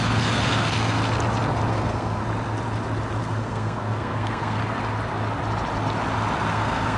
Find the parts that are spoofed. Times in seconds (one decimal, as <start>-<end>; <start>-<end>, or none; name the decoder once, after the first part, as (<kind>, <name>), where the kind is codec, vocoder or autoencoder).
0.0-1.0 (codec, SNAC); 1.7-2.2; 3.2-4.6; 6.5-7.0